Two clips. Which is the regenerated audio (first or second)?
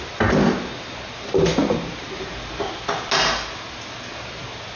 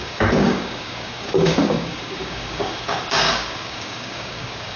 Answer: second